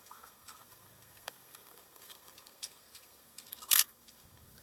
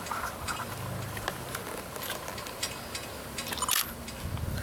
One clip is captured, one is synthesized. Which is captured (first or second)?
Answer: second